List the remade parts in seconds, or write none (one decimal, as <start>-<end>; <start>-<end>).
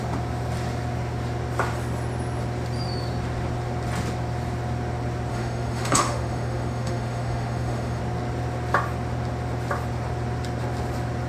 5.3-8.0